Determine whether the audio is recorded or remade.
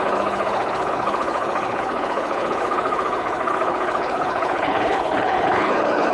remade